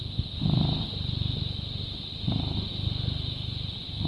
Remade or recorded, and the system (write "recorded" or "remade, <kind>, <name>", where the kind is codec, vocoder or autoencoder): recorded